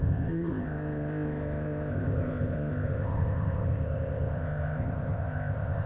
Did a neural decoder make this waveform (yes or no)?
yes